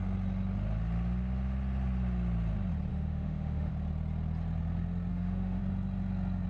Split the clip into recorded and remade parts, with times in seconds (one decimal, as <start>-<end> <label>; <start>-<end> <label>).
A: 0.0-2.9 recorded; 2.9-3.7 remade; 3.7-5.1 recorded; 5.1-5.6 remade; 5.6-6.5 recorded